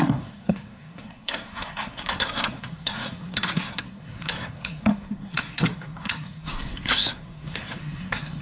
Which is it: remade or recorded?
remade